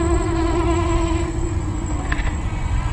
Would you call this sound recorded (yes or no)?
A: no